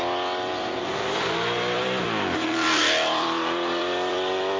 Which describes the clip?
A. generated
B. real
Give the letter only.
A